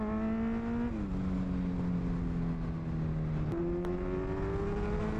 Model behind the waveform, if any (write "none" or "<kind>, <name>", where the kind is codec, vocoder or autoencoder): none